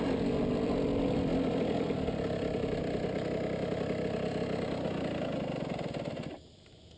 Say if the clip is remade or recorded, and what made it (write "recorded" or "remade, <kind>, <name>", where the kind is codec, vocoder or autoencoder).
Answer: recorded